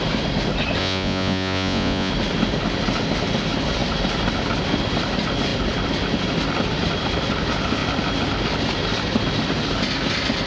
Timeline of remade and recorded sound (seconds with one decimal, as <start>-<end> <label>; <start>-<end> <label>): 0.0-0.8 recorded; 0.8-2.1 remade; 2.1-10.5 recorded